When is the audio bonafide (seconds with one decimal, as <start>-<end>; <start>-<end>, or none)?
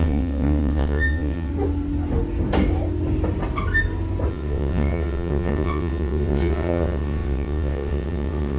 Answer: 1.5-4.3